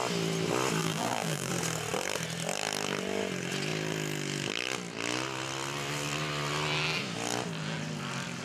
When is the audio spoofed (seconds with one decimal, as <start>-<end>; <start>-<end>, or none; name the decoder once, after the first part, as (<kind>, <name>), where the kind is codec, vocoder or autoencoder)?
0.8-1.5 (vocoder, BigVGAN v2)